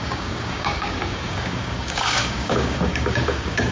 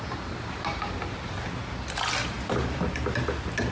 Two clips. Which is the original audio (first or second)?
second